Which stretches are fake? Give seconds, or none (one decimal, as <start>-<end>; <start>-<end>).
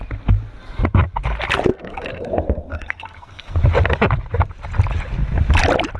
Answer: 1.7-3.6